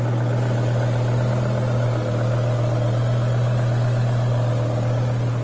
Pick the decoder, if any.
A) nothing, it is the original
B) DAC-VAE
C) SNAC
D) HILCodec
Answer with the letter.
A